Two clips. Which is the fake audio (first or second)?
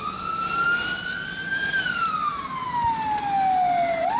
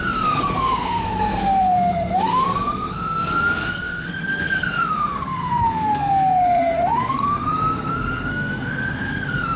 second